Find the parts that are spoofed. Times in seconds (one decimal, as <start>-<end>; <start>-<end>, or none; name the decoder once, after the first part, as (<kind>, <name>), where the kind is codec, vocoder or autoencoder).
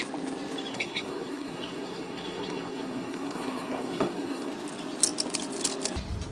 0.7-4.5 (codec, SNAC)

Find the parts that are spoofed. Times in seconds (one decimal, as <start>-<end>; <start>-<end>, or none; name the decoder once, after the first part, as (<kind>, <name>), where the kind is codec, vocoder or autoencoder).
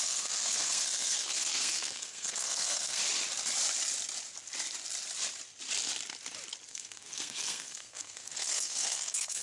0.0-3.0 (codec, SNAC); 6.7-9.4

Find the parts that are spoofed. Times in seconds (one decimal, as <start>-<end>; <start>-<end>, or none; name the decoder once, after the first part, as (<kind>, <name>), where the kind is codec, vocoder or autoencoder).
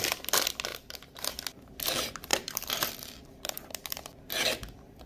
0.7-1.2 (vocoder, BigVGAN v2); 2.3-4.3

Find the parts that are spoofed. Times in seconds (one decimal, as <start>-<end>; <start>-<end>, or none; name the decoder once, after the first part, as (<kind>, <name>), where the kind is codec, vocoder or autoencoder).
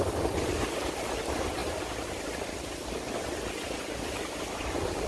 none